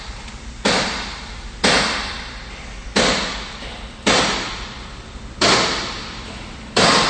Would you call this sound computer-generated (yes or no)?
yes